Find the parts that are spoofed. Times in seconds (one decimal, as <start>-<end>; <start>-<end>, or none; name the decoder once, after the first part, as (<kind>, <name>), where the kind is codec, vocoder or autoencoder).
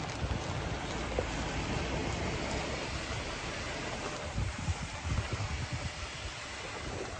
none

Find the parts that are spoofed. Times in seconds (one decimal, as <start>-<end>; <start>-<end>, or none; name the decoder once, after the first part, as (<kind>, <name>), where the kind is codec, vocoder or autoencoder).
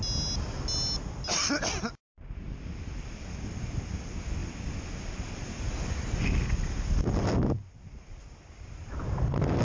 none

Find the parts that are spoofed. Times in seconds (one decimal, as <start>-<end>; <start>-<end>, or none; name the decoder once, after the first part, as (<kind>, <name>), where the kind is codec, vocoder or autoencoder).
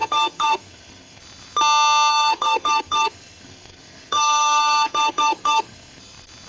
0.0-1.2 (codec, SNAC); 2.1-6.0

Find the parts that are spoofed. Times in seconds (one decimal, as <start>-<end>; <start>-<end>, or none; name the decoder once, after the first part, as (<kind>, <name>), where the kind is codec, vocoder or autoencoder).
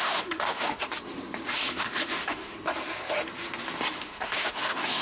0.0-0.8 (autoencoder, DAC-VAE); 1.7-2.5; 3.9-5.0